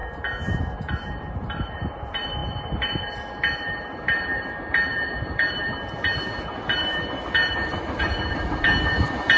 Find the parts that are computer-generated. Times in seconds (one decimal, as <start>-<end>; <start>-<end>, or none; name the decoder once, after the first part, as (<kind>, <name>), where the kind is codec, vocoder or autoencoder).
0.9-9.4 (vocoder, BigVGAN v2)